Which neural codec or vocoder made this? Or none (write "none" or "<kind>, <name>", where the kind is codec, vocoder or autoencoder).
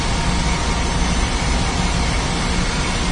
none